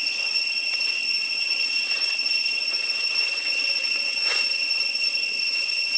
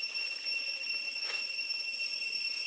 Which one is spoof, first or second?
first